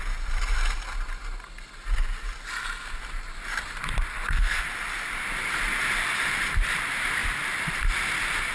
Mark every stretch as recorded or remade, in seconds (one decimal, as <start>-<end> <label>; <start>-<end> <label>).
0.0-4.1 recorded; 4.1-4.6 remade; 4.6-8.5 recorded

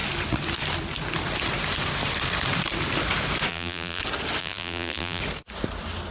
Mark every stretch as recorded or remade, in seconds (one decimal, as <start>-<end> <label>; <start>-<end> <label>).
0.0-3.5 recorded; 3.5-4.0 remade; 4.0-4.4 recorded; 4.4-5.2 remade; 5.2-6.1 recorded

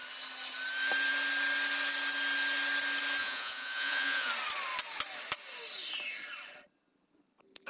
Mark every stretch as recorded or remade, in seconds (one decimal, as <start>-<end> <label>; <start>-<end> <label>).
0.0-3.2 recorded; 3.2-4.3 remade; 4.3-7.7 recorded

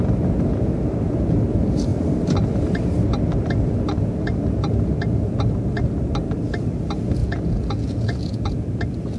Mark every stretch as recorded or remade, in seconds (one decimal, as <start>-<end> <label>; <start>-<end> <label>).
0.0-7.2 recorded; 7.2-8.7 remade; 8.7-9.2 recorded

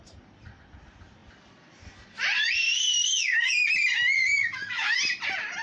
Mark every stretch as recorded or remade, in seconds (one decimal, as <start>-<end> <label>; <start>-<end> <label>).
0.0-3.0 recorded; 3.0-3.5 remade; 3.5-4.2 recorded; 4.2-5.0 remade; 5.0-5.6 recorded

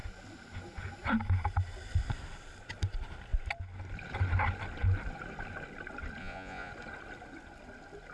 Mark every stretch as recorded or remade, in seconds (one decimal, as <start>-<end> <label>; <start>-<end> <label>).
0.0-6.2 recorded; 6.2-6.7 remade; 6.7-8.1 recorded

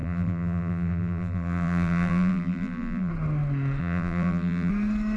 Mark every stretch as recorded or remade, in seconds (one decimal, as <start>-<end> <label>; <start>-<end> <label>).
0.0-3.1 remade; 3.1-3.8 recorded; 3.8-4.7 remade; 4.7-5.2 recorded